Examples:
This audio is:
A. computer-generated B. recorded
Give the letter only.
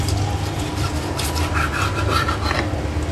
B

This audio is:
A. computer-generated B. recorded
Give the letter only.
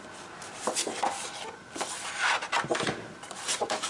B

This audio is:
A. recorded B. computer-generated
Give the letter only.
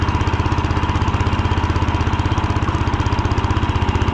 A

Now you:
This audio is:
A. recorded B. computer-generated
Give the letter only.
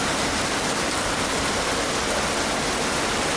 A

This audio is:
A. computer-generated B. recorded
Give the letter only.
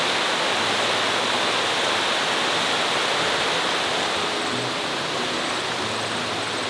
B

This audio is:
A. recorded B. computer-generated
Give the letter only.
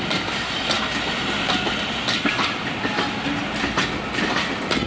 A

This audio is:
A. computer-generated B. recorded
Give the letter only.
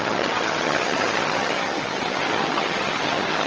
A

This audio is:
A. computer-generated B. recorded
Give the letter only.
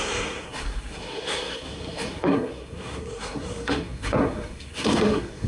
A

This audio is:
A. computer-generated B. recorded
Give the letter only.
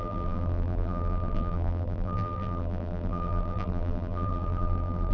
A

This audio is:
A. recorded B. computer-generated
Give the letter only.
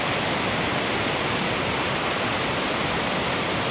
B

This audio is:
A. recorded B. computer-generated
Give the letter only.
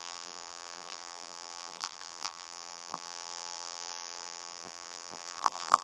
B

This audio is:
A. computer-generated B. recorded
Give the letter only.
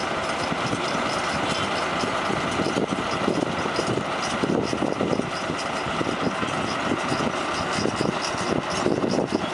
B